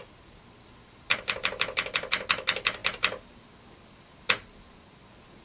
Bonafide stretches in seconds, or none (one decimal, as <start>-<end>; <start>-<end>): 0.0-5.4